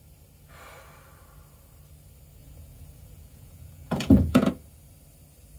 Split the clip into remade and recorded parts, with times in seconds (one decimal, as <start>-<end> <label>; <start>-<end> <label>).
0.0-2.4 recorded; 2.4-4.5 remade; 4.5-5.6 recorded